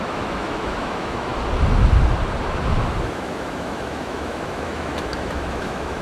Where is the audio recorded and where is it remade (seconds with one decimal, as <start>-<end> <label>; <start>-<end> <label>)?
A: 0.0-1.3 remade; 1.3-3.0 recorded; 3.0-6.0 remade